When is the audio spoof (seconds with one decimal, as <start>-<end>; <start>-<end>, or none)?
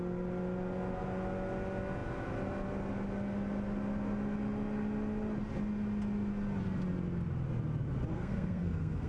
8.1-9.1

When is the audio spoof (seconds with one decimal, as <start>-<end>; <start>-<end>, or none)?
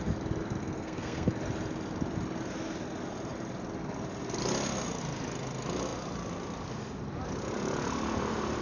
0.6-1.3